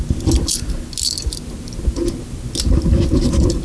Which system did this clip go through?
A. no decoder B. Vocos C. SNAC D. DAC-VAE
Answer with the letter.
A